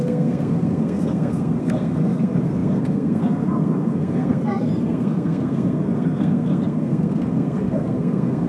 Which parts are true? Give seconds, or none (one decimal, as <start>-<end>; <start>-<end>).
none